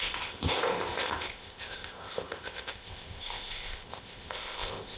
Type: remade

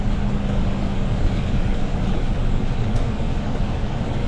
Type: remade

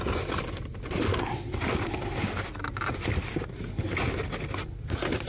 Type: recorded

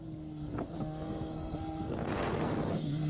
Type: remade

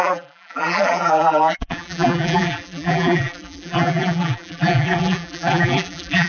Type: remade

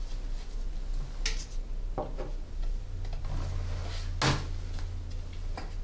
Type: recorded